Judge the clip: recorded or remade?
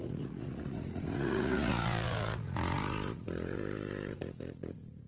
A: remade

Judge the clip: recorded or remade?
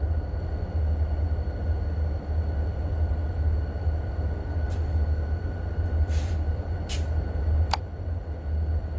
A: recorded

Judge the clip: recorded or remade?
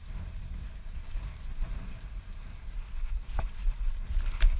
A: recorded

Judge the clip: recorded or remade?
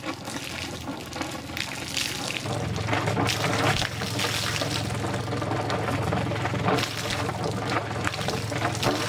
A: recorded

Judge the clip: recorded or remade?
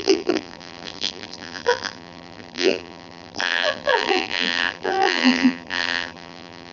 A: remade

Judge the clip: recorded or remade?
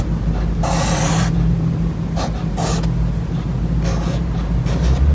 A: recorded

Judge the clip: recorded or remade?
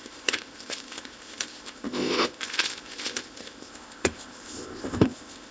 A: remade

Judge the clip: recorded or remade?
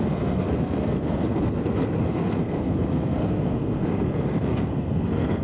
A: remade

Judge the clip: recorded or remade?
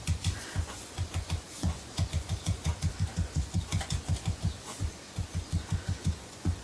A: remade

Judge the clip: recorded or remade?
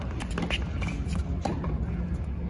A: recorded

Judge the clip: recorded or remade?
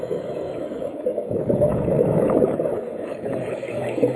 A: remade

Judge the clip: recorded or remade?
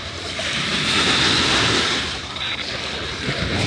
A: recorded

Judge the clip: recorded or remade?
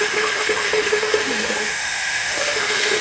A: remade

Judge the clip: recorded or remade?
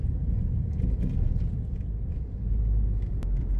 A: remade